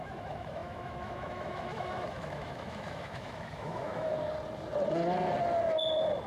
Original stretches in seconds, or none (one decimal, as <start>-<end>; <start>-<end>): 4.1-6.3